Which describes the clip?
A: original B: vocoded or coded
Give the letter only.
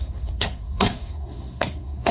B